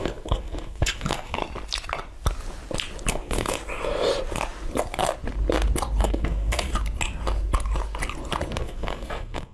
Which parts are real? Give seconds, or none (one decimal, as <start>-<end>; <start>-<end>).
1.4-3.1; 3.6-6.0; 6.7-8.6